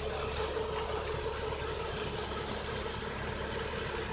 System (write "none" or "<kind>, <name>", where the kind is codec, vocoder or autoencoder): none